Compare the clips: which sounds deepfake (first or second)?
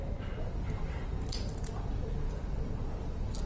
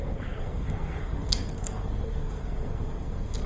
second